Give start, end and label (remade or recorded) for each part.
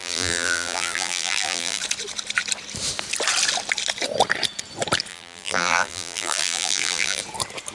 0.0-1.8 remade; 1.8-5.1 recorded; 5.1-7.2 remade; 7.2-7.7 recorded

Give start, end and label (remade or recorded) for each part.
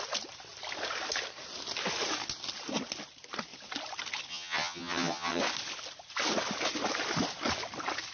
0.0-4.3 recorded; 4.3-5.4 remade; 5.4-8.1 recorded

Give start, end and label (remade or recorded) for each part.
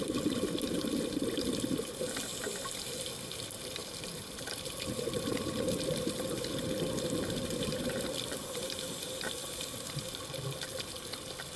0.0-3.8 recorded; 3.8-8.1 remade; 8.1-9.4 recorded; 9.4-10.0 remade; 10.0-11.6 recorded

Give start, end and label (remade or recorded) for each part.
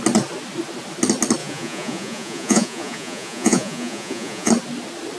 0.0-1.4 recorded; 1.4-4.5 remade; 4.5-5.2 recorded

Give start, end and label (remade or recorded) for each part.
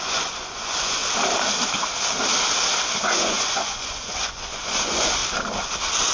0.0-1.0 remade; 1.0-3.0 recorded; 3.0-5.2 remade; 5.2-6.1 recorded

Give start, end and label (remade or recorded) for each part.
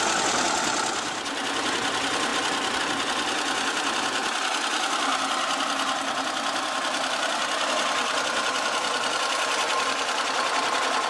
0.0-11.1 recorded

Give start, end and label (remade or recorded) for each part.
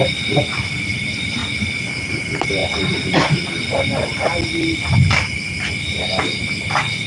0.0-1.4 remade; 1.4-2.1 recorded; 2.1-2.6 remade; 2.6-7.1 recorded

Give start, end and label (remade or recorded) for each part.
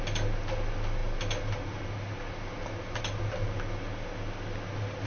0.0-5.1 recorded